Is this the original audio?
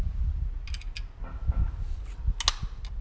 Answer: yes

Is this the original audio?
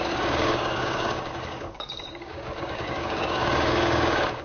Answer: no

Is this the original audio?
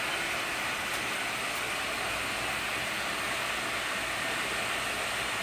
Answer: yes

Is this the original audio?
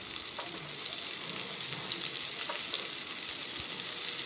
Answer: yes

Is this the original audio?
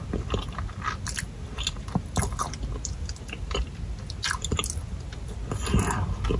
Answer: yes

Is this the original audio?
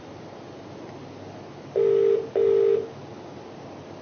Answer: yes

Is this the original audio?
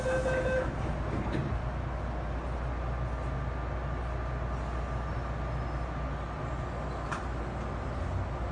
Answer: yes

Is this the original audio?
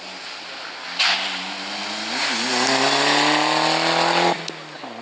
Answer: yes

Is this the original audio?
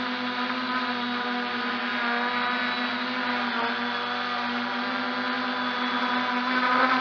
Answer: yes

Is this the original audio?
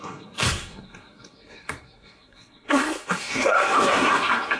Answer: no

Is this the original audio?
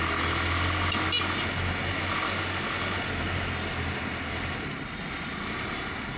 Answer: yes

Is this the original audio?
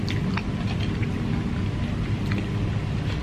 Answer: yes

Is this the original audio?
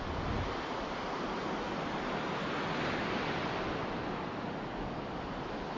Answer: yes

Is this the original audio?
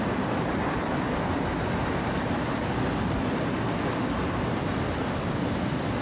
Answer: yes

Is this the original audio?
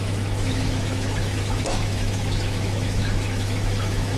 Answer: no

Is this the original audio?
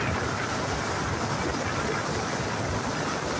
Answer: yes